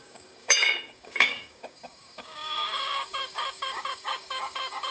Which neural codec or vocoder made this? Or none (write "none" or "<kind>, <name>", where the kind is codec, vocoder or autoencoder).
codec, DAC